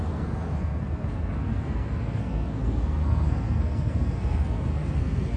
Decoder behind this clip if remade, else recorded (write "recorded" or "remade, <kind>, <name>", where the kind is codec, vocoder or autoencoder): remade, codec, SNAC